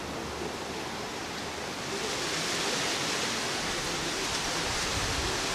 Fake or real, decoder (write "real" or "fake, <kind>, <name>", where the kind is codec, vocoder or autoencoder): real